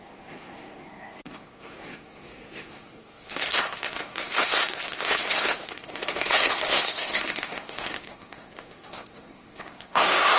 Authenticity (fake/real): fake